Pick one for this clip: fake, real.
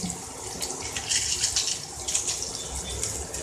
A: real